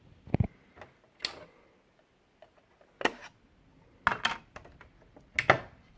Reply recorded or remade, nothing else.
recorded